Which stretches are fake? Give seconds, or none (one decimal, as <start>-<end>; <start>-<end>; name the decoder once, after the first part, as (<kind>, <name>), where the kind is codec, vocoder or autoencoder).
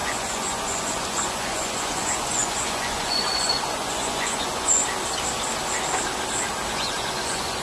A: 0.0-4.8 (vocoder, Vocos); 6.7-7.6